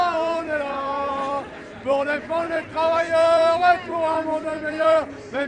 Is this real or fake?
fake